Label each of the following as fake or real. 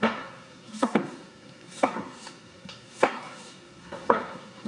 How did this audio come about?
fake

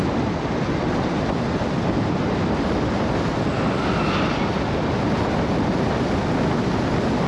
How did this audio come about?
real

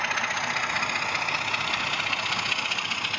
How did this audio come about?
real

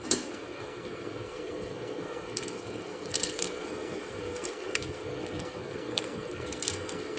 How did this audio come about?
fake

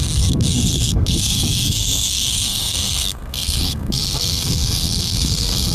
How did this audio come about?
fake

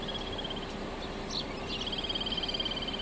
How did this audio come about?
real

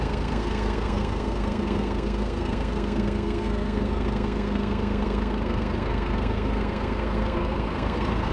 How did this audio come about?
fake